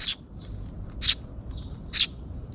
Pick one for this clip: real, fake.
real